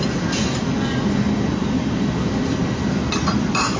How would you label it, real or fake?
real